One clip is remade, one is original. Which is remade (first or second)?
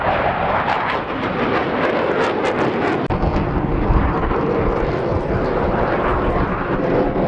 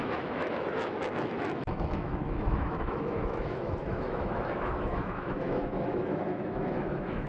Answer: second